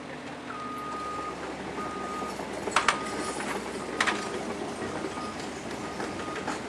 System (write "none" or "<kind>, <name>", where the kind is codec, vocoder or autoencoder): none